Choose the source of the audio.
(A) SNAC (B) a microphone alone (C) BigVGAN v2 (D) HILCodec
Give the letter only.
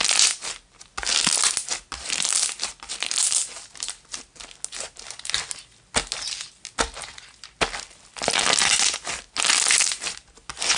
B